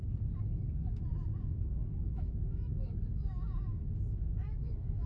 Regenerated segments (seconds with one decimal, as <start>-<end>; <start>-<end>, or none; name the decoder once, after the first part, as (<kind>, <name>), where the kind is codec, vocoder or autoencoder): 1.1-3.8 (autoencoder, DAC-VAE); 4.4-5.1